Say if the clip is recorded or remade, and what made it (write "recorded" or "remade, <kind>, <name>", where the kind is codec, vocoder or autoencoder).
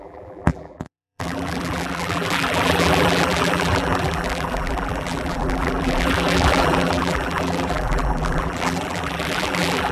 remade, vocoder, BigVGAN v2